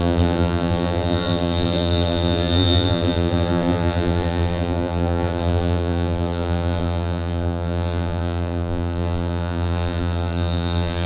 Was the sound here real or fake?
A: fake